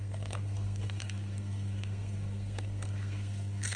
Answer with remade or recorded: remade